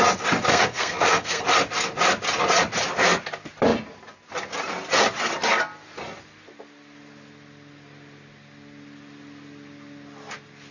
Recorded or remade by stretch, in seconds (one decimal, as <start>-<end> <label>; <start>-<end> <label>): 0.0-0.5 recorded; 0.5-1.4 remade; 1.4-10.7 recorded